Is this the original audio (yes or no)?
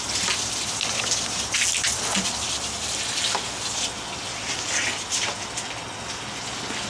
yes